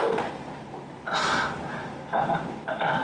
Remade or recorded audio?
remade